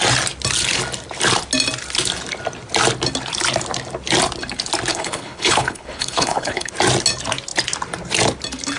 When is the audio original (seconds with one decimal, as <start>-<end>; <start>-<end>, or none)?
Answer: 0.0-4.9; 6.7-8.8